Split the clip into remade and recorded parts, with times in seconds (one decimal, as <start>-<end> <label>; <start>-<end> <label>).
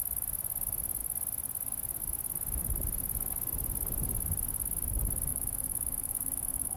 0.0-5.3 recorded; 5.3-6.8 remade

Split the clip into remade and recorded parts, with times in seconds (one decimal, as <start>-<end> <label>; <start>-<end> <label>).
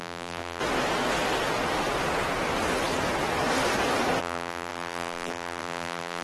0.0-0.6 remade; 0.6-4.2 recorded; 4.2-6.2 remade